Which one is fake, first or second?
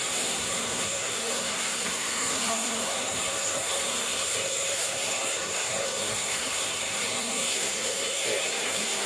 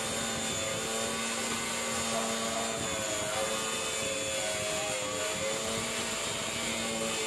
first